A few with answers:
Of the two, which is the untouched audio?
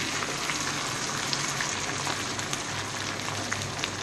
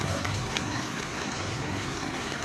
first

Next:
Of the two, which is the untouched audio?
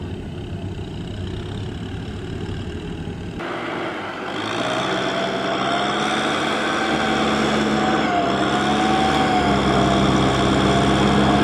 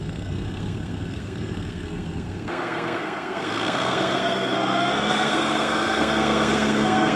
first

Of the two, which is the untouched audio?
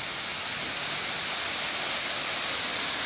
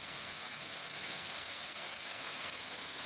first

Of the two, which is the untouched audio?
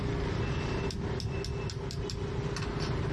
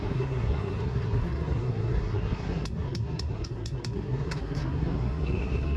first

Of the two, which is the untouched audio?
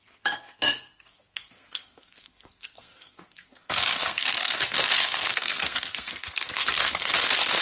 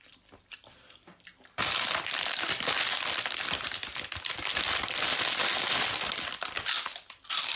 second